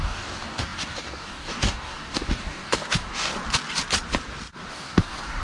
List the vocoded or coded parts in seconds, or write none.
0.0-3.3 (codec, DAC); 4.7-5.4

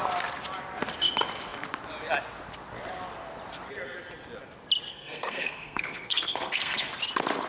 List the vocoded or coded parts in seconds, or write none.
4.9-6.9 (codec, SNAC)

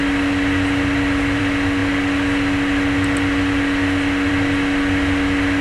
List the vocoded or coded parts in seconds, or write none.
none